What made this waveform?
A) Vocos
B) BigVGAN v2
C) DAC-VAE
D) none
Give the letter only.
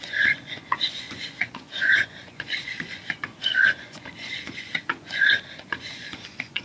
A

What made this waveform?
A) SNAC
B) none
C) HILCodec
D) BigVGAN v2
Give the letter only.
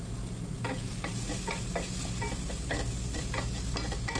B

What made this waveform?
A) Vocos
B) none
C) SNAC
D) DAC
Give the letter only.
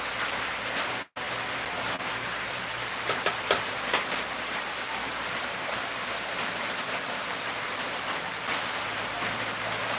B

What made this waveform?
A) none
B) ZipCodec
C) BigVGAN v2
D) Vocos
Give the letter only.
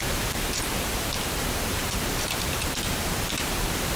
C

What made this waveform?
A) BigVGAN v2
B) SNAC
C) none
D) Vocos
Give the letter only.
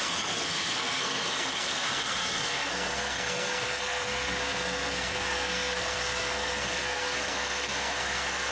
B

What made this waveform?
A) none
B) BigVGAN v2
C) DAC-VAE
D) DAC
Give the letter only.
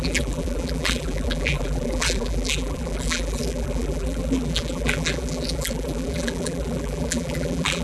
B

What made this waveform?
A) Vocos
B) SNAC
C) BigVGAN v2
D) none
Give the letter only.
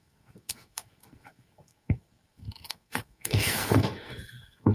B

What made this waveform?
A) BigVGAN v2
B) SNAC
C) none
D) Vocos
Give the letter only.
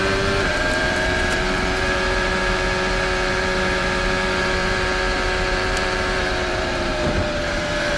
A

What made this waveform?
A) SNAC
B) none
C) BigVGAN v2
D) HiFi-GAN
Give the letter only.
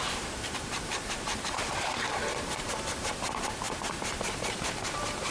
C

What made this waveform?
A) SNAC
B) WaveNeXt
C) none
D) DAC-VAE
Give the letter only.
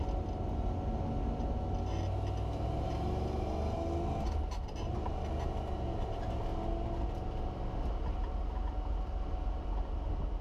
C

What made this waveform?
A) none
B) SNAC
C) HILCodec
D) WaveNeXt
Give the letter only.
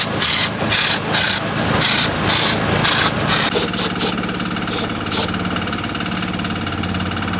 A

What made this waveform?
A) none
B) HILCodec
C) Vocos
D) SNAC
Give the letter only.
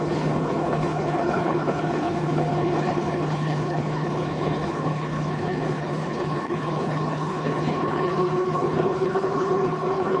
B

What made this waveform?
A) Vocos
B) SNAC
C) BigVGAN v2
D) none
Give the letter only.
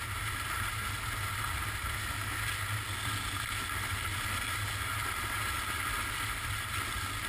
D